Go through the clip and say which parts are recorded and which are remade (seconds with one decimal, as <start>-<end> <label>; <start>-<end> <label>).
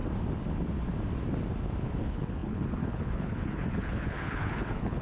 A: 0.0-2.0 recorded; 2.0-5.0 remade